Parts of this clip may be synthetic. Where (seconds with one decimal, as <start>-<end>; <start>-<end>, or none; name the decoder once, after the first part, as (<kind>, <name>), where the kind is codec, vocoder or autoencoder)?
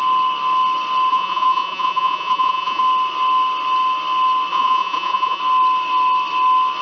1.1-2.8 (vocoder, Vocos); 4.5-5.4